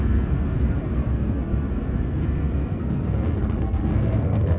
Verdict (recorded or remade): remade